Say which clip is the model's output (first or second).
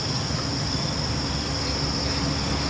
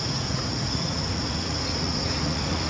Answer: second